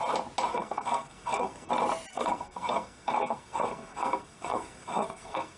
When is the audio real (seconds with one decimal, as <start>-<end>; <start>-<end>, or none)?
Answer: 0.0-0.5; 1.7-2.1